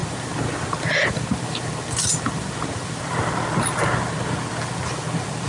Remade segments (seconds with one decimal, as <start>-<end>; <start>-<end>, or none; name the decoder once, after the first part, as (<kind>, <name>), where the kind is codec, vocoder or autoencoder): 0.0-3.3 (vocoder, BigVGAN v2)